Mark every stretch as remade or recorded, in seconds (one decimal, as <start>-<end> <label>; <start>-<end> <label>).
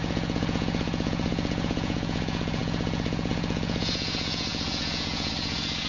0.0-5.9 remade